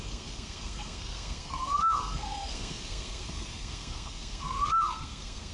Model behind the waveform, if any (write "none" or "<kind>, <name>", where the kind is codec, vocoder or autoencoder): codec, SNAC